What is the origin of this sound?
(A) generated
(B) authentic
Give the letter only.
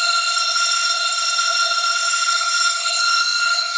A